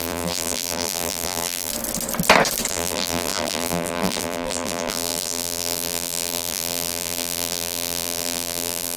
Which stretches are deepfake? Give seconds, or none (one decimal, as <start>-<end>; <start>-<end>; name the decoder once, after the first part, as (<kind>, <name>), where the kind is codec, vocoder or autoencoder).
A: 0.0-1.7 (vocoder, BigVGAN v2); 2.7-9.0